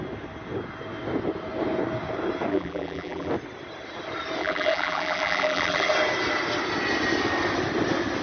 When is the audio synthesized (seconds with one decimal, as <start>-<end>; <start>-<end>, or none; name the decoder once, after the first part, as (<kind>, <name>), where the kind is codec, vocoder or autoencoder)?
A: 2.5-3.3 (vocoder, BigVGAN v2); 4.4-5.9